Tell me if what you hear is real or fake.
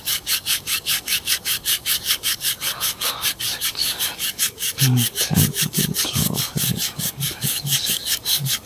fake